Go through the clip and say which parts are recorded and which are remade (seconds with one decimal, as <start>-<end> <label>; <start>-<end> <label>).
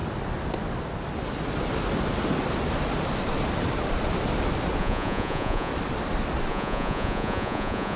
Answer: 0.0-4.8 recorded; 4.8-5.7 remade; 5.7-6.5 recorded; 6.5-8.0 remade